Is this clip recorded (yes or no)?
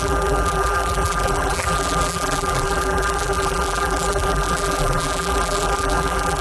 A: no